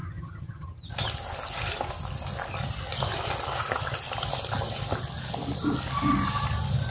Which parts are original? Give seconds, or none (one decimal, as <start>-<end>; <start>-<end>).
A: 0.9-6.9